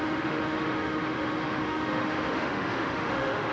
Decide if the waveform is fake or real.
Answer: fake